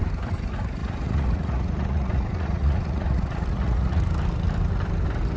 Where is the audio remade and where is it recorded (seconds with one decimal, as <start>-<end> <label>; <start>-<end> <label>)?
0.0-0.8 recorded; 0.8-4.0 remade; 4.0-5.4 recorded